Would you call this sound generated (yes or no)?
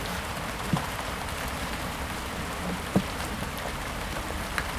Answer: yes